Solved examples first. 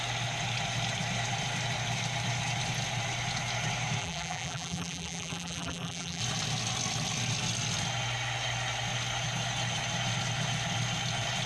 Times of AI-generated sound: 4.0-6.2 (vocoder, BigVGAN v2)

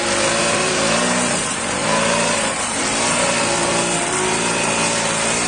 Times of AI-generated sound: 0.4-2.8 (vocoder, BigVGAN v2)

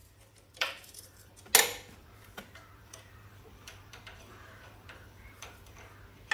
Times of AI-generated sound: 0.0-1.3 (vocoder, BigVGAN v2); 2.0-5.8

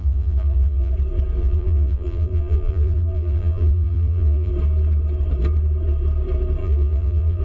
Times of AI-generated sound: 0.0-0.9 (vocoder, BigVGAN v2); 1.4-4.5; 6.6-7.4

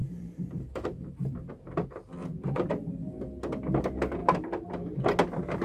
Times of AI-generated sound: 0.0-1.5 (vocoder, BigVGAN v2); 2.2-2.8; 4.2-5.0

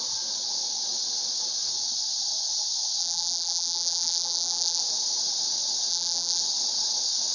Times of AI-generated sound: 3.0-4.8 (vocoder, BigVGAN v2); 5.9-6.4

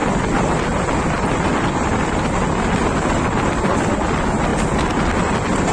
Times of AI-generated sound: 0.0-0.5 (vocoder, BigVGAN v2); 1.5-3.9; 4.5-5.1

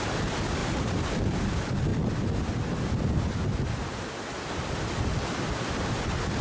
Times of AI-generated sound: 0.6-1.5 (vocoder, BigVGAN v2)